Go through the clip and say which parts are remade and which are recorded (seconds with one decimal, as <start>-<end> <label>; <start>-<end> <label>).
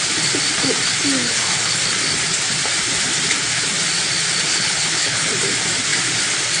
0.0-1.2 recorded; 1.2-1.8 remade; 1.8-4.5 recorded; 4.5-5.3 remade; 5.3-6.6 recorded